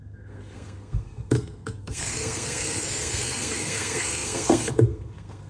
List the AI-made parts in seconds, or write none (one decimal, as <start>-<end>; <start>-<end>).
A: 0.0-5.5